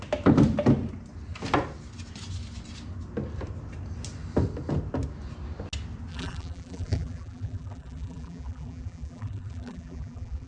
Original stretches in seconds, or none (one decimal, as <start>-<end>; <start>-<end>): 0.0-6.1

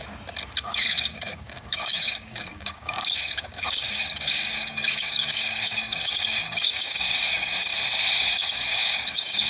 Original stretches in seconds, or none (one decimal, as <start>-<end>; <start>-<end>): 0.0-0.6; 7.7-8.3

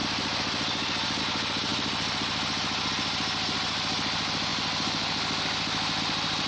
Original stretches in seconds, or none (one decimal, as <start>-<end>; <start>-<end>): 0.0-6.5

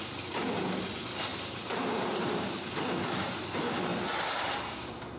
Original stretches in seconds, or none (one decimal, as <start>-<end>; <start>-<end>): 0.0-1.3; 2.7-5.2

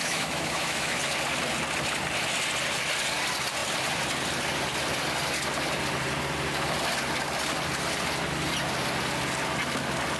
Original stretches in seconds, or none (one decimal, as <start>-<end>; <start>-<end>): 1.0-10.2

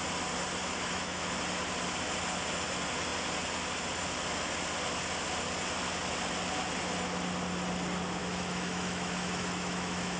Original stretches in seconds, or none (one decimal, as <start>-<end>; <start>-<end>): 0.0-0.6; 1.3-8.2

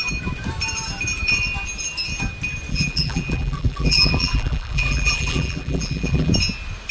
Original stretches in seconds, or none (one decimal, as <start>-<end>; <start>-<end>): 0.0-2.7; 6.3-6.9

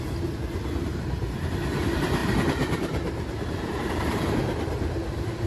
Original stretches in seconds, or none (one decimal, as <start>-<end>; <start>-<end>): 0.0-0.9; 1.5-2.2